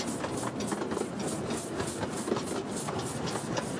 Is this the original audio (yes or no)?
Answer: yes